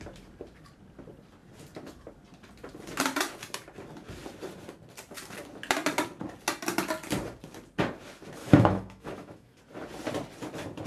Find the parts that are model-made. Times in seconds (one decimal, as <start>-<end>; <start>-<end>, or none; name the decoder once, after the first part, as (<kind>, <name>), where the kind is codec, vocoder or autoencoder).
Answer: 8.4-9.6 (autoencoder, DAC-VAE)